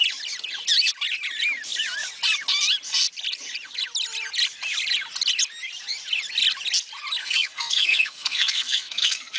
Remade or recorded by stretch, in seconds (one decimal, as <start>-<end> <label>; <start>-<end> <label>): 0.0-7.2 recorded; 7.2-9.4 remade